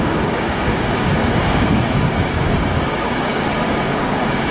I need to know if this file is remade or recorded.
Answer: remade